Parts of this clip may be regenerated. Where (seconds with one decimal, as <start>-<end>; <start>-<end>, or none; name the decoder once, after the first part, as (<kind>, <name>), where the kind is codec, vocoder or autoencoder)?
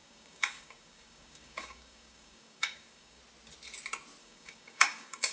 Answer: 0.0-3.2 (codec, DAC); 4.2-5.3